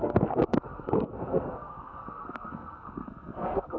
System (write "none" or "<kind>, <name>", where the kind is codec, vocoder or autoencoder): codec, SNAC